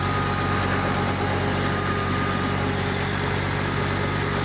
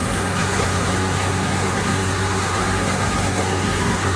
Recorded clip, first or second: first